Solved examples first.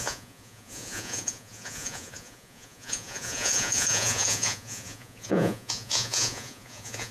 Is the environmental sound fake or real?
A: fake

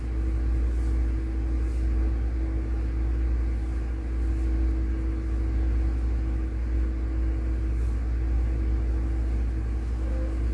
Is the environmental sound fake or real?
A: real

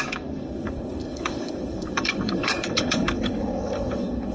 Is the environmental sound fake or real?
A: fake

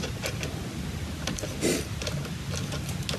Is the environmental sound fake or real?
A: real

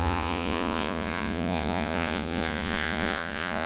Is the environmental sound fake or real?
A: fake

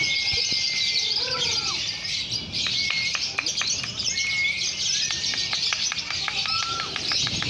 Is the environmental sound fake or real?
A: real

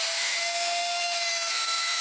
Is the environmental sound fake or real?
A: fake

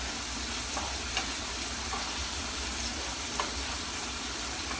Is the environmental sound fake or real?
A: real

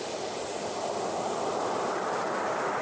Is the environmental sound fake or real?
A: real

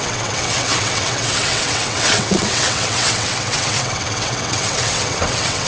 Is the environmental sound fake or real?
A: fake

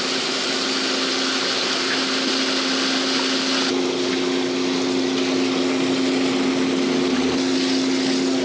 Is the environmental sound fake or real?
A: real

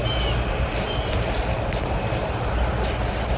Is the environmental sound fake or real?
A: real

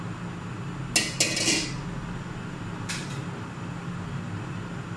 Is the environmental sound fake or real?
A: real